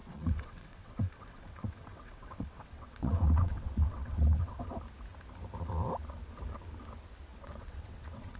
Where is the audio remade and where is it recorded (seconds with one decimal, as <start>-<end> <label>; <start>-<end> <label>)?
0.0-4.6 remade; 4.6-7.3 recorded; 7.3-8.4 remade